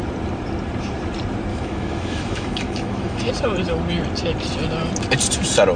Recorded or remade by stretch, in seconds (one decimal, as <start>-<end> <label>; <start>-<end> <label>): 0.0-1.5 recorded; 1.5-3.3 remade; 3.3-5.8 recorded